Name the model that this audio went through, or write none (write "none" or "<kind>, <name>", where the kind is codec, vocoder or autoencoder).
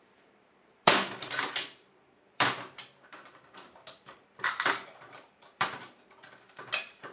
vocoder, BigVGAN v2